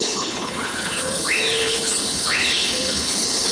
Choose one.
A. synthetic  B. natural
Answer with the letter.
A